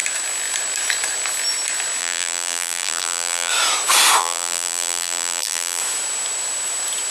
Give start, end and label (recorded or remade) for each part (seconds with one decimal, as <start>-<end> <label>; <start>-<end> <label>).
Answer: 0.0-2.0 recorded; 2.0-3.5 remade; 3.5-4.2 recorded; 4.2-5.8 remade; 5.8-7.1 recorded